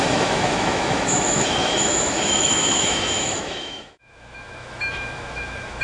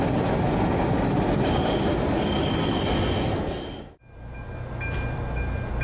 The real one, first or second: second